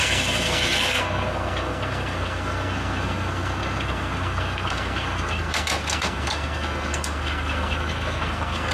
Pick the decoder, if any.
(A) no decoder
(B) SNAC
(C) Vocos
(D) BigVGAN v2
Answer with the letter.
B